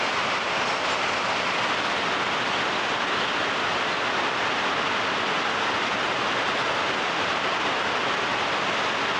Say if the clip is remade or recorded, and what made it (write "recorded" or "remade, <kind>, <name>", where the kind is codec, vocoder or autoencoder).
recorded